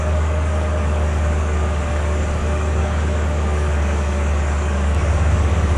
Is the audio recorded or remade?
remade